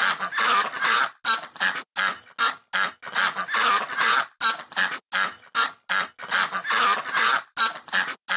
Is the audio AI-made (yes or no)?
no